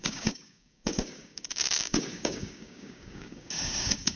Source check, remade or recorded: remade